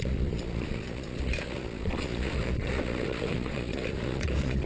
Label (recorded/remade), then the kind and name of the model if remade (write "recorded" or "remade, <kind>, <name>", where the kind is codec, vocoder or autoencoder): remade, vocoder, Vocos